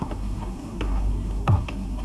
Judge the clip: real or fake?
fake